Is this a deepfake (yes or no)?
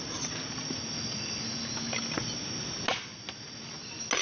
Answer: no